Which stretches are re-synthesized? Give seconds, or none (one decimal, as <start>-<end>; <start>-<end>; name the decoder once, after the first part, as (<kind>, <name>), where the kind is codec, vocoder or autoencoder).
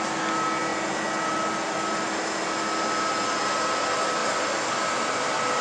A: none